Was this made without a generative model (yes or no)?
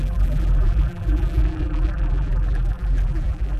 no